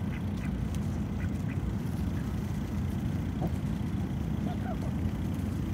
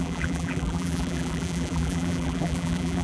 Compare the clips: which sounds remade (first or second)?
second